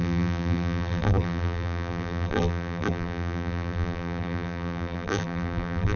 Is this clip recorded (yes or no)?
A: no